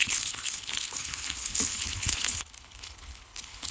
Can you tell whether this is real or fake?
fake